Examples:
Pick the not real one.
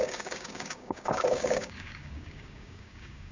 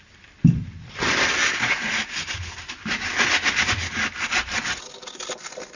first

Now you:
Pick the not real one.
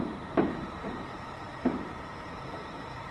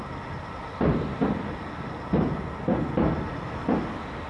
first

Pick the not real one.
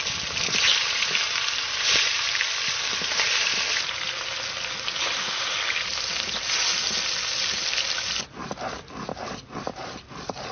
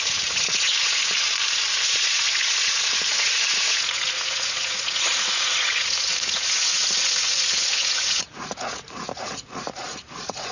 second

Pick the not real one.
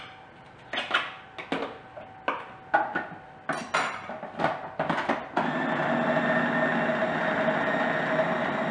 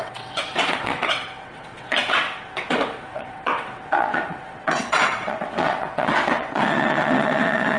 second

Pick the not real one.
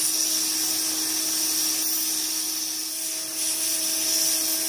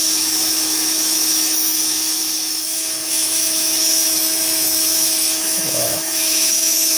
second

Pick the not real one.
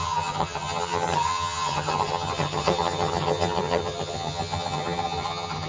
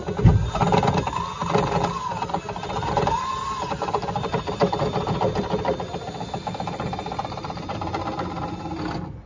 first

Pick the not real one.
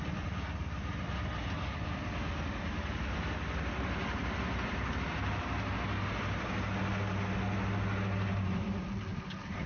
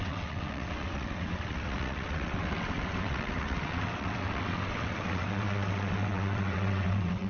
second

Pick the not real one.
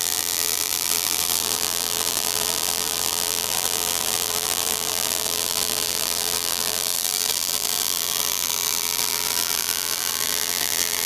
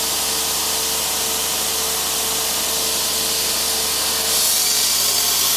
first